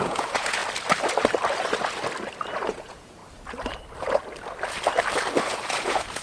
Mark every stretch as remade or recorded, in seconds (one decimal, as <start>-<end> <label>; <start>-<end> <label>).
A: 0.0-0.6 remade; 0.6-2.6 recorded; 2.6-3.2 remade; 3.2-5.4 recorded; 5.4-6.2 remade